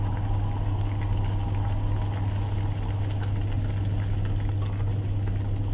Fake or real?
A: real